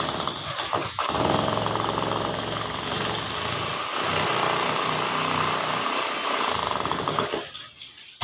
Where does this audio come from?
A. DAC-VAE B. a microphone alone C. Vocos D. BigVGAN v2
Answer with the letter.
B